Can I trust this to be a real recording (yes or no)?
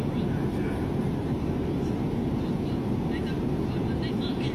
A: yes